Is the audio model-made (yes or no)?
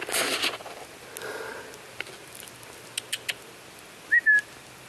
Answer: no